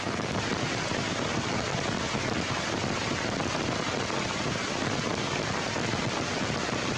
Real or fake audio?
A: fake